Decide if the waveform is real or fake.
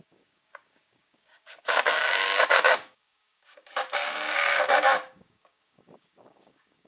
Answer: fake